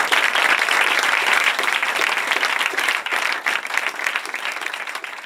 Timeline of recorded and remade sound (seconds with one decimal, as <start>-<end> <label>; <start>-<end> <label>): 0.0-0.5 recorded; 0.5-1.8 remade; 1.8-2.7 recorded; 2.7-3.1 remade; 3.1-4.7 recorded; 4.7-5.3 remade

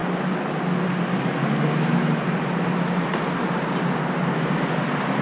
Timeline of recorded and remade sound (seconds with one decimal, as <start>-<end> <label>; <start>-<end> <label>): 0.0-0.6 remade; 0.6-5.2 recorded

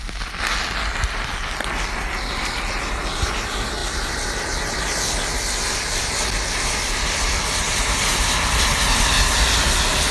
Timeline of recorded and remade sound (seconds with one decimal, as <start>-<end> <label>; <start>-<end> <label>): 0.0-10.1 recorded

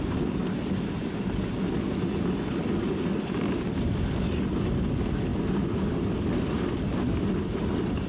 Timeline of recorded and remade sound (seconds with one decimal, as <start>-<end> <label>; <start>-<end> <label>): 0.0-8.1 recorded

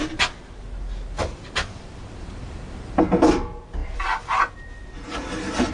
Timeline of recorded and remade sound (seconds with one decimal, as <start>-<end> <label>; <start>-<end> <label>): 0.0-1.1 recorded; 1.1-3.0 remade; 3.0-5.7 recorded

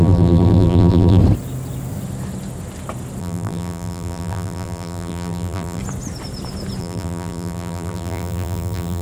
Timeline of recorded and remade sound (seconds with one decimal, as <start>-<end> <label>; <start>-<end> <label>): 0.0-1.2 remade; 1.2-3.2 recorded; 3.2-5.8 remade; 5.8-6.8 recorded; 6.8-9.0 remade

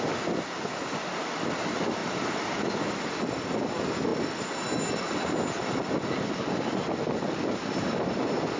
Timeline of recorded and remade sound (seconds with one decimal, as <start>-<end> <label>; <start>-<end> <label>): 0.0-2.0 recorded; 2.0-3.1 remade; 3.1-8.6 recorded